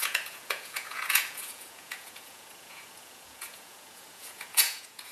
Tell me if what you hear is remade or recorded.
remade